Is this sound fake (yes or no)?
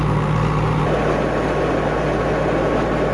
no